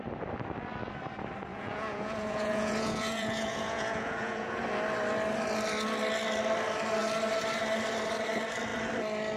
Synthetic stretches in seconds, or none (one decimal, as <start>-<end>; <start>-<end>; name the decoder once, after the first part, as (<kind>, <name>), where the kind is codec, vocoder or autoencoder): 1.5-4.6 (vocoder, Vocos)